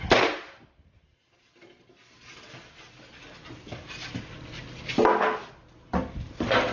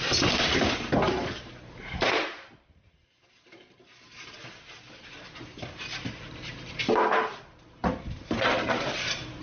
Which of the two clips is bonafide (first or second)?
first